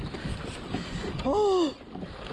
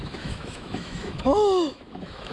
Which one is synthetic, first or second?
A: second